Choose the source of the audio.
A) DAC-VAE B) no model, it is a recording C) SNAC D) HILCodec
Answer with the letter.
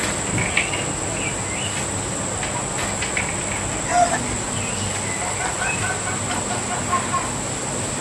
B